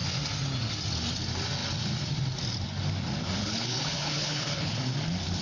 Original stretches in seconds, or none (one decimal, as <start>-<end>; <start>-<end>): 0.0-3.4; 4.8-5.4